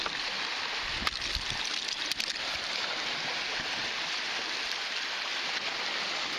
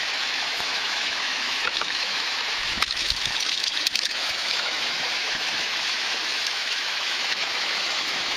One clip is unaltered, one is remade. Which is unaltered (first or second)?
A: first